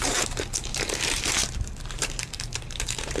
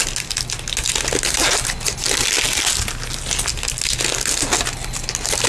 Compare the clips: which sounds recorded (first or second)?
second